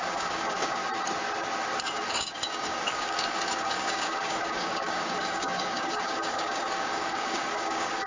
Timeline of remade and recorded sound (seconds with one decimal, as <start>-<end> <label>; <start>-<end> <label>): 0.0-0.8 remade; 0.8-1.8 recorded; 1.8-8.1 remade